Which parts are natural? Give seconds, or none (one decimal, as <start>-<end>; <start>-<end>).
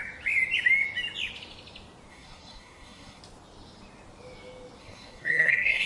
0.0-2.1; 3.2-4.8